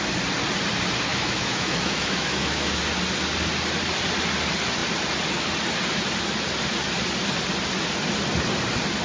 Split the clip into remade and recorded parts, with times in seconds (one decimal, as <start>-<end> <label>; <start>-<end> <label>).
0.0-1.1 recorded; 1.1-2.8 remade; 2.8-9.0 recorded